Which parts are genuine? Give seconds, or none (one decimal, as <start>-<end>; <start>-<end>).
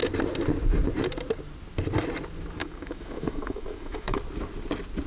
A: 0.0-2.6; 4.2-5.1